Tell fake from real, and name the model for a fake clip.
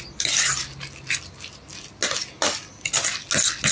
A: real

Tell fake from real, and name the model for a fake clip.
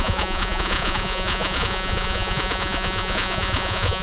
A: fake, vocoder, Vocos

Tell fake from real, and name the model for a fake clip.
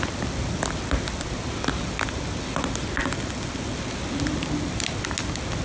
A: real